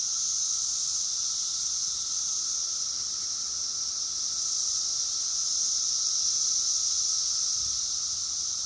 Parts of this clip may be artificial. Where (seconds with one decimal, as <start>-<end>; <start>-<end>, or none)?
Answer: 3.9-4.4